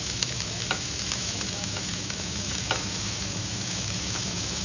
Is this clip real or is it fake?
fake